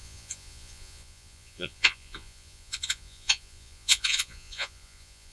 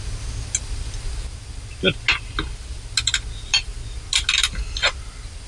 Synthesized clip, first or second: first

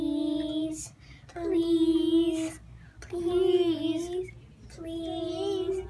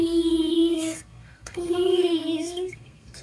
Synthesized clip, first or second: second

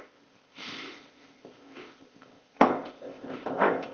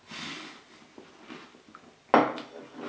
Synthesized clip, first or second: first